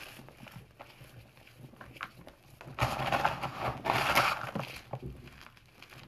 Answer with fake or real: real